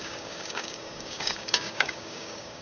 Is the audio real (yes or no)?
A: no